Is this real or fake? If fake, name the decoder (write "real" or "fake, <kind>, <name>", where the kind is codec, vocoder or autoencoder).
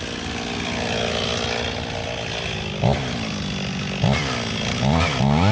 real